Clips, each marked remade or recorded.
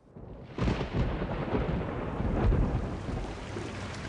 remade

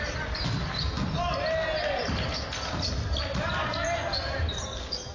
recorded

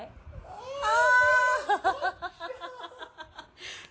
remade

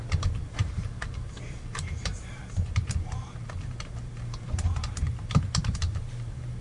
remade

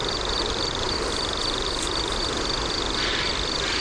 recorded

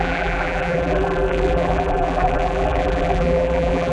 remade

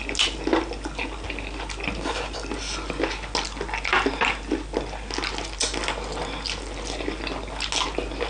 recorded